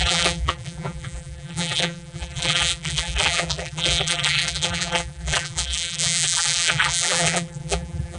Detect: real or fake fake